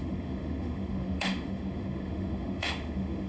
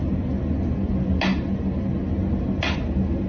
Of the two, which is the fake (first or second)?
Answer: first